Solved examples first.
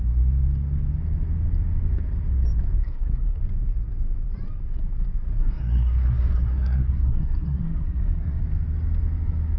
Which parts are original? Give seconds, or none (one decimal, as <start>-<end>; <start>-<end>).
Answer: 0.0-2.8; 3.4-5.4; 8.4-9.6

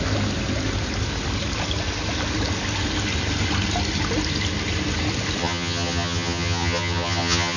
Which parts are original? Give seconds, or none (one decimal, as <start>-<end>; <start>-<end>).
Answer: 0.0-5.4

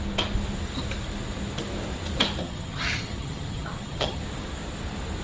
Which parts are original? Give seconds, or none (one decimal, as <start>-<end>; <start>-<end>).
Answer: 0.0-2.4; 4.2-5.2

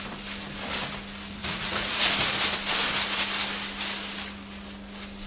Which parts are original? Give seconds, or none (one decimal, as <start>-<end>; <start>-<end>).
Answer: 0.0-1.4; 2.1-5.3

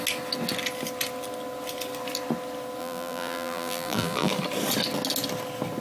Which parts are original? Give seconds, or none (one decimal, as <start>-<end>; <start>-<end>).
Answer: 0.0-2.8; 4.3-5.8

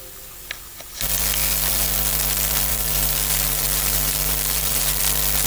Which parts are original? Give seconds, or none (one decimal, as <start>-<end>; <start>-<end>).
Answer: 0.0-2.7; 5.0-5.5

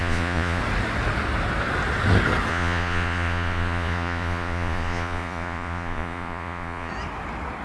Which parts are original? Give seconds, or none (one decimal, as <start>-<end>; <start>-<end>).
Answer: 0.6-2.5; 6.9-7.6